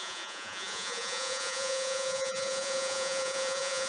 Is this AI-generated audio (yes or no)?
yes